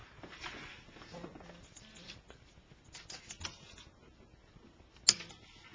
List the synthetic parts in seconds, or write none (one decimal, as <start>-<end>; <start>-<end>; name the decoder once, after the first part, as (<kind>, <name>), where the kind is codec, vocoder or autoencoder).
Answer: none

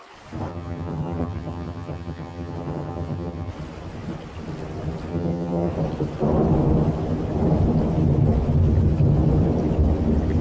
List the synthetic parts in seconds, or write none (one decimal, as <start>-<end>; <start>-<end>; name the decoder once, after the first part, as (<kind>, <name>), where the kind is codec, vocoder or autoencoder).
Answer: 0.5-3.5 (vocoder, HiFi-GAN); 5.1-5.7

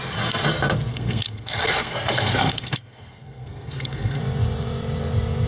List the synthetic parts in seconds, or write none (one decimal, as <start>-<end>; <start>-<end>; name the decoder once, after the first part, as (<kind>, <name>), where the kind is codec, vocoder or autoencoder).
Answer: 0.9-4.2 (codec, SNAC)

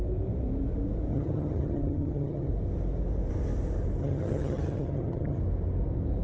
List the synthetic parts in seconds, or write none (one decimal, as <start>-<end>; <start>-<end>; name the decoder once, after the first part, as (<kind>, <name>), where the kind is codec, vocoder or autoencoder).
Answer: 1.1-2.5 (vocoder, HiFi-GAN); 4.0-5.4

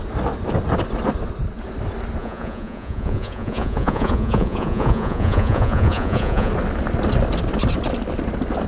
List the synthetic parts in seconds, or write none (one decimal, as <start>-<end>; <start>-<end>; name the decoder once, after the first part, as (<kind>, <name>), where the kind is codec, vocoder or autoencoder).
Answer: 2.2-6.5 (vocoder, Vocos)

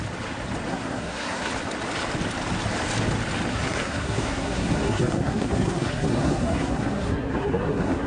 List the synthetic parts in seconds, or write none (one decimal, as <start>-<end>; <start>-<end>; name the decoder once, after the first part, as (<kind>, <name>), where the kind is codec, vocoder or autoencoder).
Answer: 0.7-1.5 (codec, SNAC); 3.5-8.1

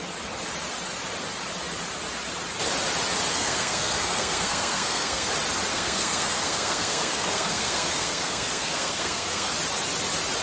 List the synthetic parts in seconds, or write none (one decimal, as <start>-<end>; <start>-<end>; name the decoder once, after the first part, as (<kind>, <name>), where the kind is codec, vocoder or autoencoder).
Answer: 3.3-5.3 (codec, SNAC); 5.7-9.5

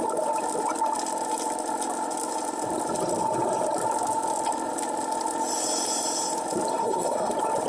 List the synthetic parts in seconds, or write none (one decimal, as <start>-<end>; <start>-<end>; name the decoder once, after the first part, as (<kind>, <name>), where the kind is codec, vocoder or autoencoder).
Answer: 6.7-7.3 (codec, SNAC)